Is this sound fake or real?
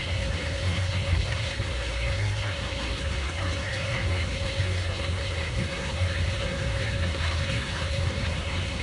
fake